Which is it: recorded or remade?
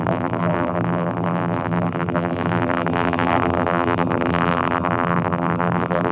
remade